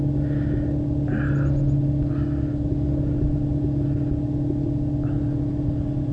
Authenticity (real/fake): real